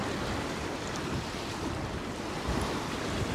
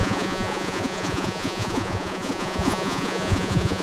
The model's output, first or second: second